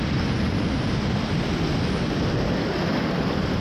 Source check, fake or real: real